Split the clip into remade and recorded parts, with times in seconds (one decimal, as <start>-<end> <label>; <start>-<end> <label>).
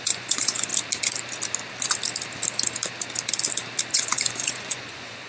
0.0-0.7 remade; 0.7-3.9 recorded; 3.9-5.3 remade